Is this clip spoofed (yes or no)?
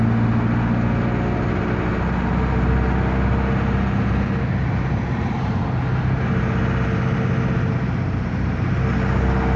no